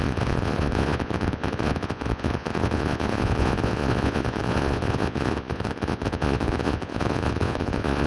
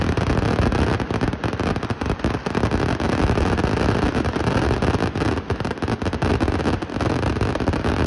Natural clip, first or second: second